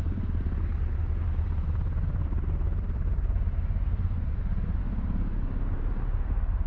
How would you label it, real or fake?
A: fake